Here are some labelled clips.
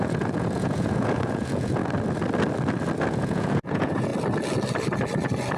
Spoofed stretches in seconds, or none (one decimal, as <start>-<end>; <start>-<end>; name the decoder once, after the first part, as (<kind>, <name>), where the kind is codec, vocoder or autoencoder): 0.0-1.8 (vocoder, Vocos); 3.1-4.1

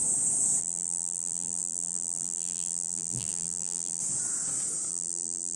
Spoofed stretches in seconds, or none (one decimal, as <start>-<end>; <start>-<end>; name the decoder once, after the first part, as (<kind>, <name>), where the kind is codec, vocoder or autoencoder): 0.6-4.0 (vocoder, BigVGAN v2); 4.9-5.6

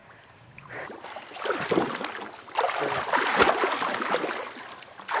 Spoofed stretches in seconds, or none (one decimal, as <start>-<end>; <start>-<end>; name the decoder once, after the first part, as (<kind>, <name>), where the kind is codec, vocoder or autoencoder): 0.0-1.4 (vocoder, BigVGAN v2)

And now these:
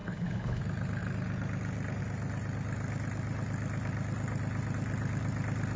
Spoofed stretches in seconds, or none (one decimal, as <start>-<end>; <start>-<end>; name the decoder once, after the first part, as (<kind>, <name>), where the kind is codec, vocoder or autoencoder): 0.0-0.6 (codec, HILCodec)